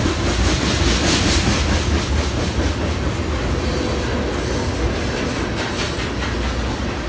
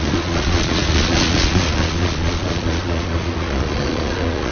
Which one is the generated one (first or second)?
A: second